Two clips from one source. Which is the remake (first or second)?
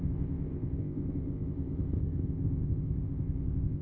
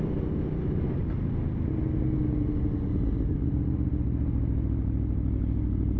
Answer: first